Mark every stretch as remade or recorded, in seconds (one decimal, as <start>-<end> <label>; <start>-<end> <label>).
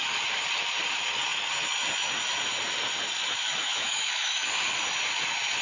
0.0-3.6 recorded; 3.6-4.5 remade; 4.5-5.6 recorded